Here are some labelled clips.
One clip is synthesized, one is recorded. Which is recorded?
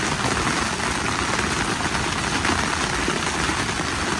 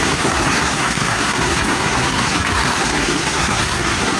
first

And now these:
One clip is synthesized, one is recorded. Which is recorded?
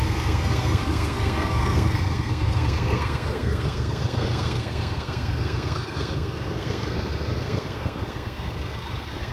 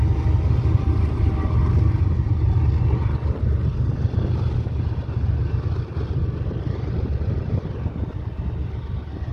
second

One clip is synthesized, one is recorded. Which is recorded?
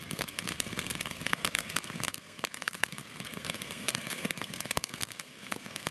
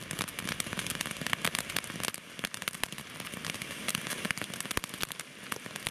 second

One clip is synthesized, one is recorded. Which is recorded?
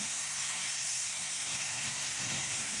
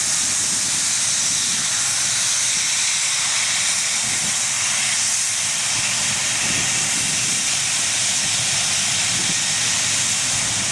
second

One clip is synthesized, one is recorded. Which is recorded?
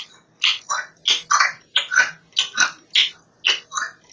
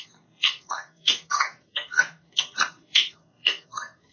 first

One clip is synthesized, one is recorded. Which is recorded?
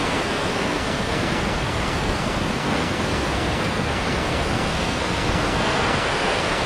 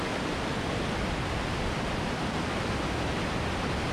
second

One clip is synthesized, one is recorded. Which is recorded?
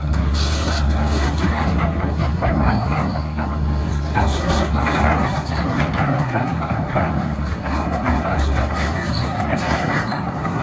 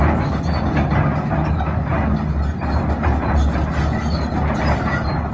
second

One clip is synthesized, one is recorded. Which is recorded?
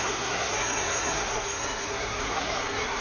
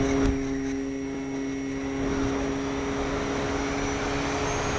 second